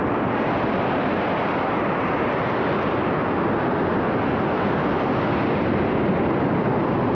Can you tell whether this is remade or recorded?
recorded